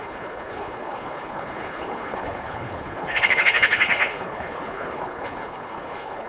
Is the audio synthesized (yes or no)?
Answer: yes